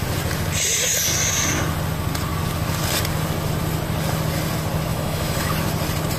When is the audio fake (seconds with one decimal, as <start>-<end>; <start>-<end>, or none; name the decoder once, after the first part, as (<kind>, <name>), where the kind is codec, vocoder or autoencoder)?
4.9-5.5 (autoencoder, DAC-VAE)